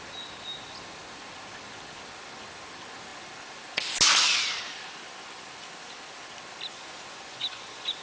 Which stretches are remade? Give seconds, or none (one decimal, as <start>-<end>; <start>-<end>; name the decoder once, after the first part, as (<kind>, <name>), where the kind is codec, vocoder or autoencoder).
6.7-8.0 (vocoder, Vocos)